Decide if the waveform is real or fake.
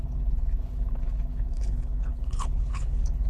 fake